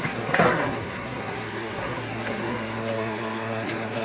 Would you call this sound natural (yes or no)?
no